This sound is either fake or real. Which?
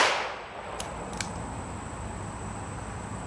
real